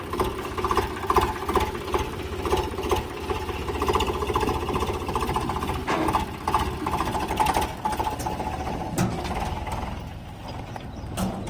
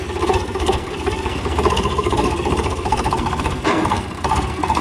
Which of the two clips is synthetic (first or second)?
second